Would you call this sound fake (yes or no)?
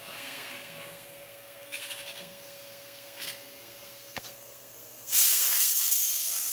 yes